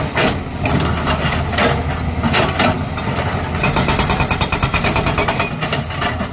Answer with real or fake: real